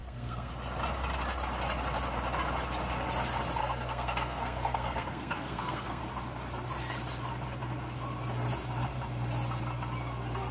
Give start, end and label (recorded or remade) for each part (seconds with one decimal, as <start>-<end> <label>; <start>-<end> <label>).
0.0-0.5 remade; 0.5-3.6 recorded; 3.6-6.0 remade; 6.0-10.5 recorded